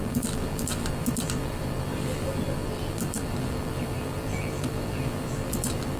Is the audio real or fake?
fake